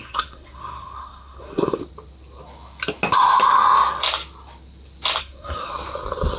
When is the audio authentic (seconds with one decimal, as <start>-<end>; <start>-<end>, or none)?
1.8-5.2; 5.7-6.4